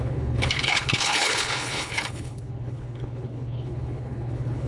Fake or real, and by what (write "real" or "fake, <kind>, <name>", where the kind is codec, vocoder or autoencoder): fake, codec, HILCodec